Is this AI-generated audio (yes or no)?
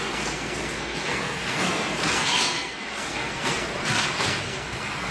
yes